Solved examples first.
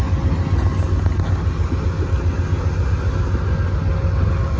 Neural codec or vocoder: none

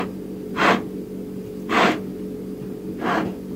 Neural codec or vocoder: none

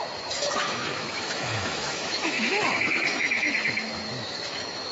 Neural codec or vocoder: autoencoder, DAC-VAE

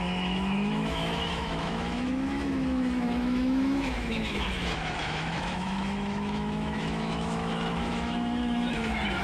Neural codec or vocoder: autoencoder, DAC-VAE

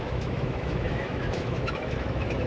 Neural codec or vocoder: autoencoder, DAC-VAE